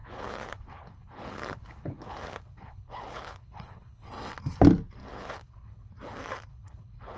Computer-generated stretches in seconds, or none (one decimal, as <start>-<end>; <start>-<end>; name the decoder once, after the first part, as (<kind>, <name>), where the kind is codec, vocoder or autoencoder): 0.0-4.1 (codec, HILCodec); 5.0-5.9; 6.5-7.2